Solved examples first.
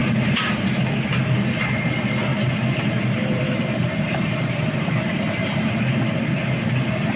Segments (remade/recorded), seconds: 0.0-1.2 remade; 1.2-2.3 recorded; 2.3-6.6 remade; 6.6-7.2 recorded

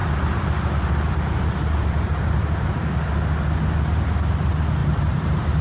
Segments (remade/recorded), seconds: 0.0-3.1 remade; 3.1-4.8 recorded; 4.8-5.6 remade

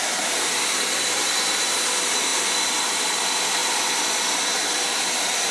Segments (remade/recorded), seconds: 0.0-5.5 recorded